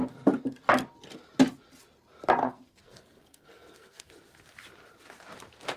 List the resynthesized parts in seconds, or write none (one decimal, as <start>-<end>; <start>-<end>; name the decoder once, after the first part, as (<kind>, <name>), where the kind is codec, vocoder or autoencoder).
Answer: 2.4-4.1 (codec, SNAC)